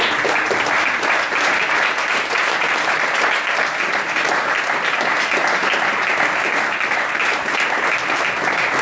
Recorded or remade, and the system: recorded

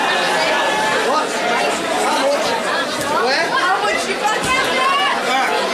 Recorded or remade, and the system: recorded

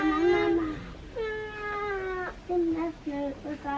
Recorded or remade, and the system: recorded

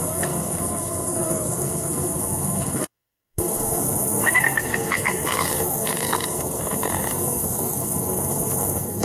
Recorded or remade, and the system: remade, codec, SNAC